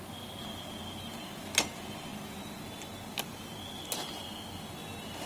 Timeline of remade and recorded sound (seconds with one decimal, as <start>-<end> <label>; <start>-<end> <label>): 0.0-5.3 recorded